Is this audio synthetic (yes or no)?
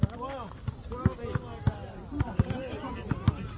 no